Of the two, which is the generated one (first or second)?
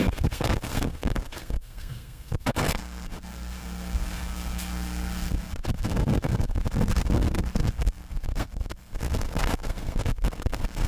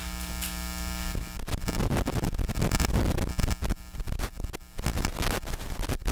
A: first